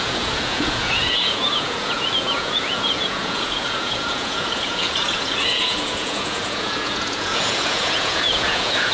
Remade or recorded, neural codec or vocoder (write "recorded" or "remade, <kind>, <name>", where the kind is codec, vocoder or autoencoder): remade, vocoder, Vocos